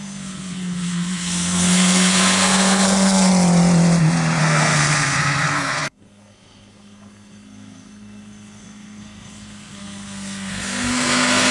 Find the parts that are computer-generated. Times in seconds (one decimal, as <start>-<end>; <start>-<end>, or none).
0.0-3.3; 4.4-11.5